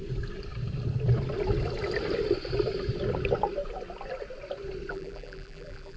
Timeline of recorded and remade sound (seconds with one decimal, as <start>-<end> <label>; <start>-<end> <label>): 0.0-4.9 recorded; 4.9-6.0 remade